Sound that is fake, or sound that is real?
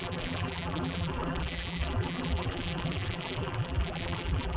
fake